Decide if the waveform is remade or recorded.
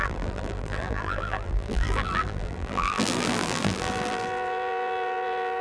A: remade